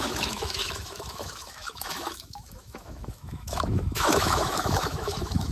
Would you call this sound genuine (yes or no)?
no